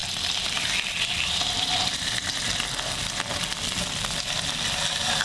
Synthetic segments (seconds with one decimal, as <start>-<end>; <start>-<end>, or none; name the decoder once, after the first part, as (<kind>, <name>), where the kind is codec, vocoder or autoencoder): none